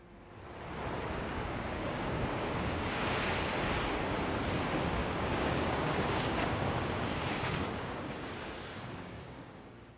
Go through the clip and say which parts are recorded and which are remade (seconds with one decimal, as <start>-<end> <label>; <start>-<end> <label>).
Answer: 0.0-1.3 recorded; 1.3-3.1 remade; 3.1-5.0 recorded; 5.0-10.0 remade